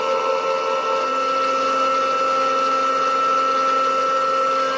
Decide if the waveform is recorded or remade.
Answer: recorded